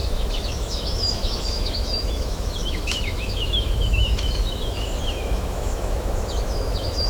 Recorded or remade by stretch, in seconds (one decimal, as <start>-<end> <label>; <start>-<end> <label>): 0.0-7.1 remade